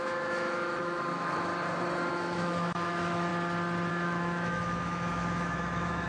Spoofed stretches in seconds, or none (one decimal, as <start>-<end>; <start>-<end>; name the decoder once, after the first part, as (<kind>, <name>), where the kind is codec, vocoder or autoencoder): 0.0-1.5 (autoencoder, DAC-VAE); 2.1-3.3; 3.9-6.1